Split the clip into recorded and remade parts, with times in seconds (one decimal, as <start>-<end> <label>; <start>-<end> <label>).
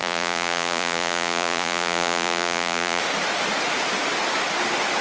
0.0-3.0 remade; 3.0-5.0 recorded